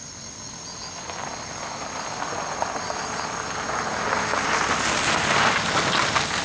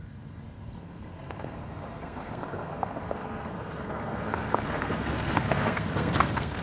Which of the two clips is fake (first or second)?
second